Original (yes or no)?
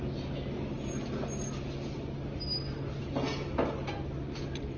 yes